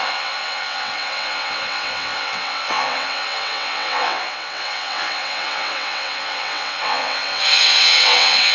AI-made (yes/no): yes